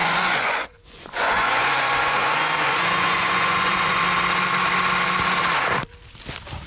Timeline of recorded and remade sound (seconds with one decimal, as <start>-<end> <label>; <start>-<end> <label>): 0.0-4.0 remade; 4.0-6.7 recorded